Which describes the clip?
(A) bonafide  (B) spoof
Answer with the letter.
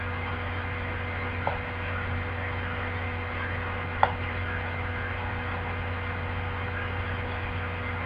A